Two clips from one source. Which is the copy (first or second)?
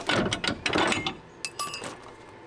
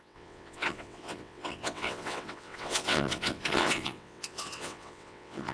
second